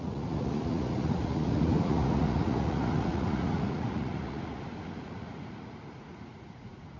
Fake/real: fake